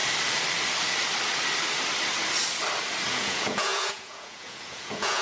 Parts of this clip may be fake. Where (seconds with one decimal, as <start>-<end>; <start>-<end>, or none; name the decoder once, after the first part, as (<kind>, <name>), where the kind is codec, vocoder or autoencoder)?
3.1-5.2 (vocoder, Vocos)